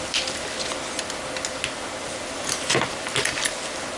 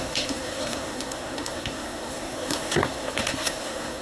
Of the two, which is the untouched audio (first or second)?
first